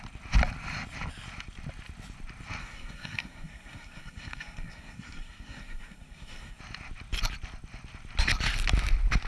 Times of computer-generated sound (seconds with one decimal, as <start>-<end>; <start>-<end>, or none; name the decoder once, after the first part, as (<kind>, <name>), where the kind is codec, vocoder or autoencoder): 2.6-6.6 (codec, SNAC)